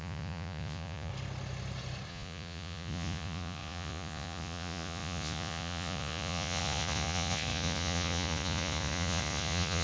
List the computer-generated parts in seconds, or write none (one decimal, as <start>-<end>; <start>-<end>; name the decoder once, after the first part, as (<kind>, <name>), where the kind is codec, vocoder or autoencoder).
0.0-1.1 (vocoder, Vocos); 2.1-9.8